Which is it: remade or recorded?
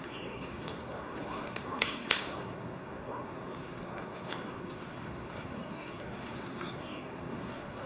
remade